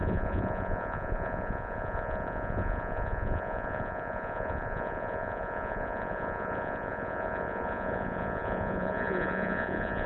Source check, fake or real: fake